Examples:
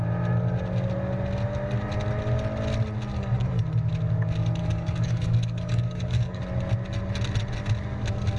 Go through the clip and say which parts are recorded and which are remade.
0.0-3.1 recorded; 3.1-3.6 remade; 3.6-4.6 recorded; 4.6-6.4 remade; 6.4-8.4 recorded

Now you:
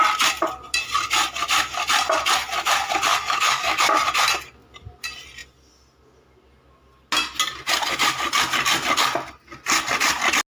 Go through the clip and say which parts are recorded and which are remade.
0.0-3.1 recorded; 3.1-3.8 remade; 3.8-10.5 recorded

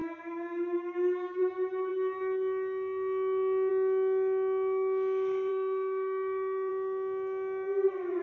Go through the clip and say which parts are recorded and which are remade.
0.0-1.4 remade; 1.4-5.5 recorded; 5.5-6.7 remade; 6.7-8.2 recorded

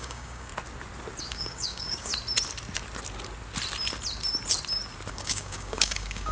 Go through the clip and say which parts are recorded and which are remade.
0.0-0.5 remade; 0.5-1.2 recorded; 1.2-2.1 remade; 2.1-5.1 recorded; 5.1-6.3 remade

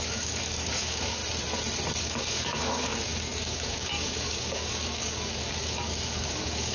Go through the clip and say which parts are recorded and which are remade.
0.0-1.2 remade; 1.2-2.0 recorded; 2.0-6.7 remade

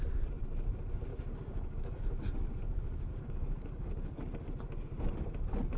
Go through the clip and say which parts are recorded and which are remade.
0.0-1.1 recorded; 1.1-2.0 remade; 2.0-3.1 recorded; 3.1-3.9 remade; 3.9-5.8 recorded